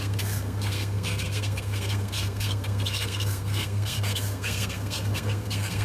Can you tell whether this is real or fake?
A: fake